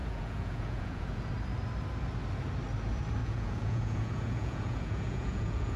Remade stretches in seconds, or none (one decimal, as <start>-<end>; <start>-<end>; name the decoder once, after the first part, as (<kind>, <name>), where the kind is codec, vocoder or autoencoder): 0.0-1.3 (vocoder, Vocos); 3.2-5.8